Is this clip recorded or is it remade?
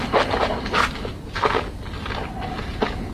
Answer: recorded